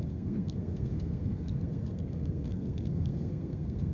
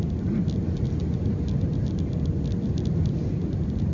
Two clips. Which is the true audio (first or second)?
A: second